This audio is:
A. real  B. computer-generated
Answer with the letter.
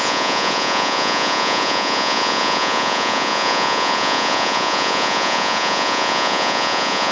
B